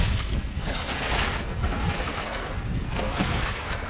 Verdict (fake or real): fake